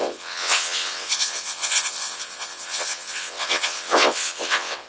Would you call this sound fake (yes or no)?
yes